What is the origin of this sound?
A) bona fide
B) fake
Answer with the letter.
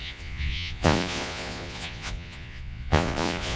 B